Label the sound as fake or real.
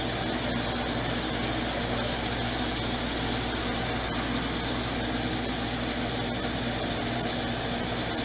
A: real